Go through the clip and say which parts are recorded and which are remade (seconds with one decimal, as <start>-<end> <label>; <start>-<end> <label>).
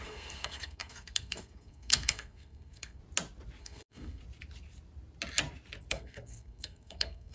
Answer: 0.0-3.0 remade; 3.0-3.6 recorded; 3.6-4.2 remade; 4.2-5.9 recorded; 5.9-7.3 remade